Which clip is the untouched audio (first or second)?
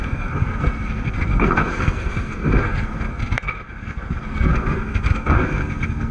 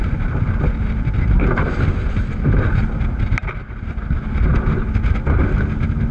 second